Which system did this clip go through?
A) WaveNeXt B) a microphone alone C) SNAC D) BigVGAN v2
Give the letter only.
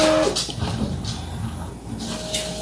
B